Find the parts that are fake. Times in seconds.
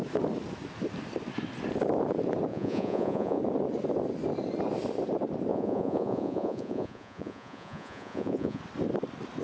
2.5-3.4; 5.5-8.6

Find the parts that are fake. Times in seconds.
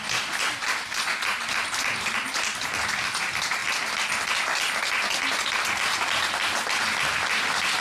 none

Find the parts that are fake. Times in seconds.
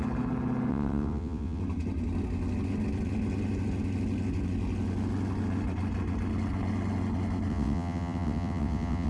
0.7-1.6; 7.5-9.1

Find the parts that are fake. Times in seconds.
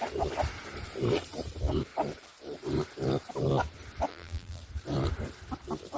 4.1-4.6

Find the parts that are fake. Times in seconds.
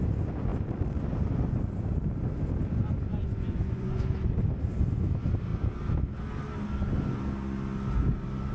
3.1-4.0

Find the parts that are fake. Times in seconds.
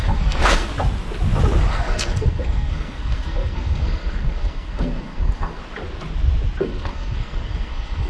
0.0-0.7; 1.7-5.6; 6.6-8.1